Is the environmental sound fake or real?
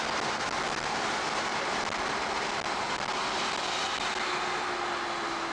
real